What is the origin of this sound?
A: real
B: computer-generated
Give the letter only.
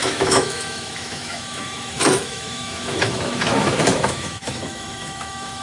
B